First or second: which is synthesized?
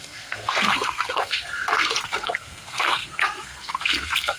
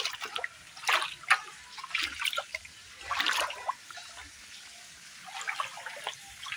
first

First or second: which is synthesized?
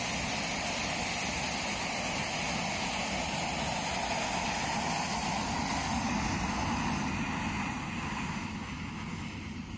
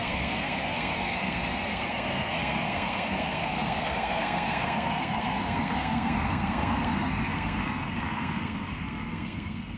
second